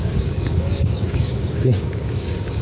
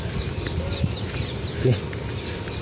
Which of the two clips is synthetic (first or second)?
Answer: first